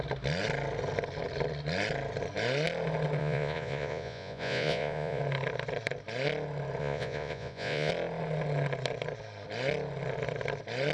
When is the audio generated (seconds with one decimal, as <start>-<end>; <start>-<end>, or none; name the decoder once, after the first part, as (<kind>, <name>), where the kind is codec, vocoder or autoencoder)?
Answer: 3.2-5.2 (vocoder, Vocos); 6.8-7.9